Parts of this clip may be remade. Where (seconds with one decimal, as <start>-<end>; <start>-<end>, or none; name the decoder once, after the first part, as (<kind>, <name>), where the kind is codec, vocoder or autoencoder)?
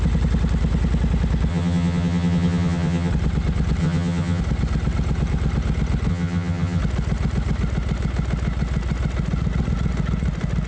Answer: 1.5-3.1 (vocoder, HiFi-GAN); 3.8-4.4; 6.1-6.8